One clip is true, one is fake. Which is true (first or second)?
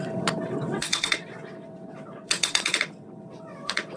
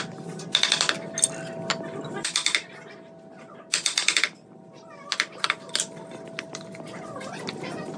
second